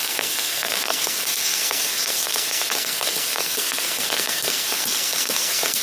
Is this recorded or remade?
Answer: remade